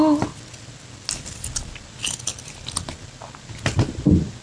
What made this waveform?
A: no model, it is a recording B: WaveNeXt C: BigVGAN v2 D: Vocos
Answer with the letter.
A